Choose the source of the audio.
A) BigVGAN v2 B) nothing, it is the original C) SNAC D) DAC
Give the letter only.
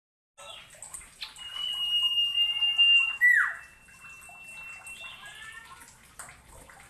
B